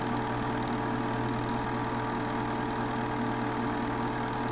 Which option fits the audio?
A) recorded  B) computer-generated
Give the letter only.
A